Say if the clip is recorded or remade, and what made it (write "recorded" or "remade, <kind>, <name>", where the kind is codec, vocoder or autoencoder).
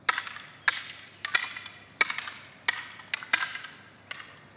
recorded